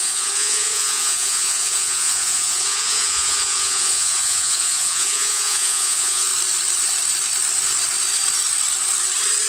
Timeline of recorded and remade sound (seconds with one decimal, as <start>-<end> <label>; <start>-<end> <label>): 0.0-6.3 remade; 6.3-9.5 recorded